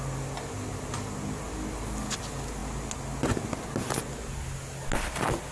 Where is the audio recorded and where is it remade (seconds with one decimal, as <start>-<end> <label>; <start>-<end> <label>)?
0.0-5.5 recorded